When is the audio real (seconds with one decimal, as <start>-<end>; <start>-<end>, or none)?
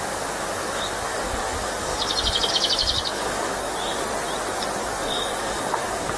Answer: 3.7-4.8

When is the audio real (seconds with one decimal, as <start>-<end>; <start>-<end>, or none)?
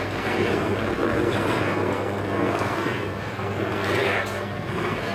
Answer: none